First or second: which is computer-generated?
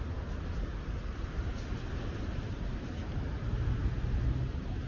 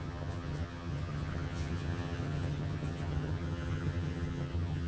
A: second